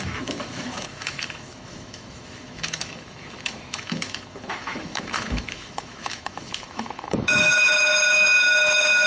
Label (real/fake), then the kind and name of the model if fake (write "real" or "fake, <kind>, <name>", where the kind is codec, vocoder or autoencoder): fake, autoencoder, DAC-VAE